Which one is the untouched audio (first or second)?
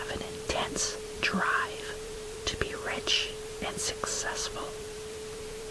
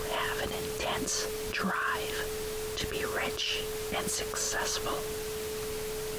second